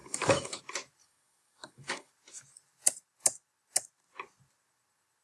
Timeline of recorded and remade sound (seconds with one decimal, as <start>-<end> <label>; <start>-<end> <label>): 0.0-0.6 remade; 0.6-1.0 recorded; 1.0-2.1 remade; 2.1-5.2 recorded